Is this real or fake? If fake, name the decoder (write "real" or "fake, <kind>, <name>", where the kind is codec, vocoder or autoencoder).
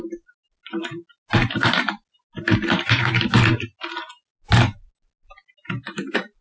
real